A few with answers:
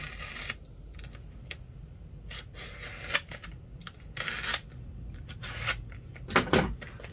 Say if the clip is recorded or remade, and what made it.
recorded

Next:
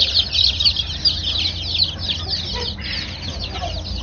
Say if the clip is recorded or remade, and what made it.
recorded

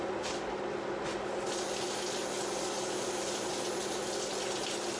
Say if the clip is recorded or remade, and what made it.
recorded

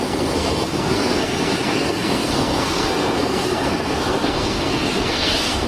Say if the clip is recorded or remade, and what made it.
remade, codec, SNAC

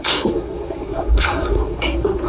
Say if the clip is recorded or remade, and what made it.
remade, codec, SNAC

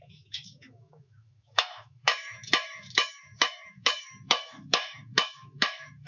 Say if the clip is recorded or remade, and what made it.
remade, autoencoder, DAC-VAE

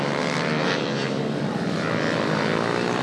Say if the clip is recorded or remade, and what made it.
recorded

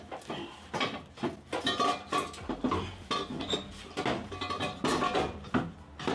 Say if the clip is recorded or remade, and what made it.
recorded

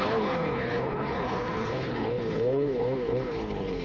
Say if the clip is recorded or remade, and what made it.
remade, codec, HILCodec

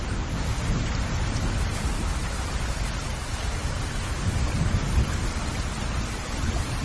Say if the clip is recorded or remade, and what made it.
recorded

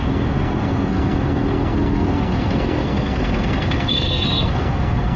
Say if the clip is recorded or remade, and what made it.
remade, codec, SNAC